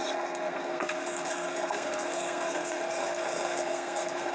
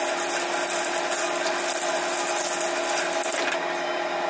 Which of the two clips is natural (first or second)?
second